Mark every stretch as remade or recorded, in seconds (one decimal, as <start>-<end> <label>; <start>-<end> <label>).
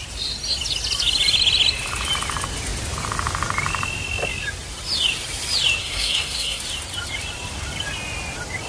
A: 0.0-5.8 recorded; 5.8-6.6 remade; 6.6-8.7 recorded